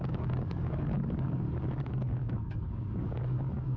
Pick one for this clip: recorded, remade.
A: remade